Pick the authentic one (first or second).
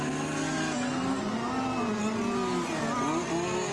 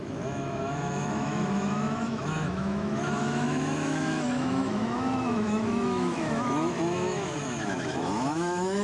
first